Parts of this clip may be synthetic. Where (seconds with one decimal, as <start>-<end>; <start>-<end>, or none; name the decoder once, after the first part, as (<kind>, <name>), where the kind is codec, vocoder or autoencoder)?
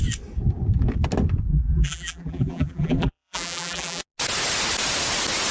1.5-4.0 (vocoder, BigVGAN v2)